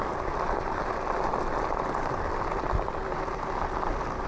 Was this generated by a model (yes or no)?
no